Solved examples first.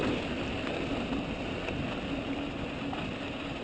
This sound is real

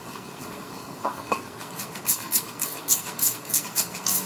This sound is fake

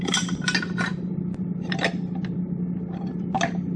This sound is real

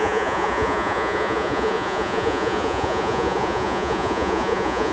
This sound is fake